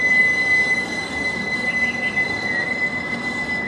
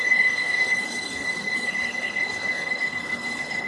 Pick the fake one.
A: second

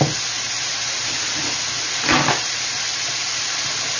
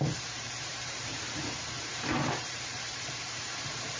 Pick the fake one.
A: second